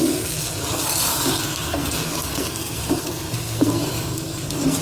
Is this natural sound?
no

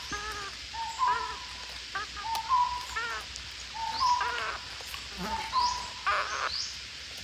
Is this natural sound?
yes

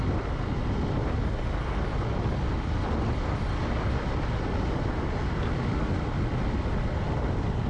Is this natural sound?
yes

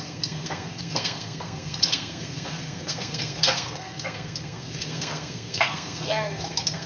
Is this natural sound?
no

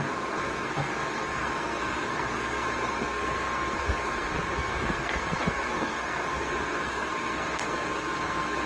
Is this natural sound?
no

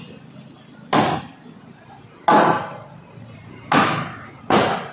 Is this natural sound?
yes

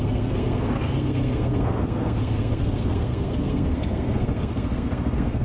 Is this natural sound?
no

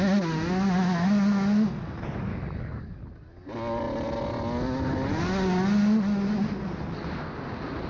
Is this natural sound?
yes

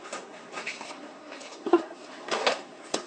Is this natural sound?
no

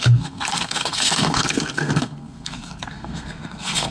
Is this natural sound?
no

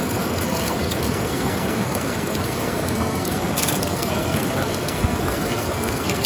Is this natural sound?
no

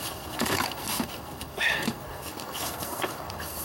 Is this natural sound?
no